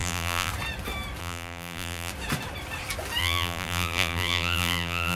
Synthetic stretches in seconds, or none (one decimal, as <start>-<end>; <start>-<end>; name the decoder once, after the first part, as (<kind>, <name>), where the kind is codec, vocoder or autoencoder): 0.0-0.5 (vocoder, BigVGAN v2); 1.2-2.1; 3.2-5.2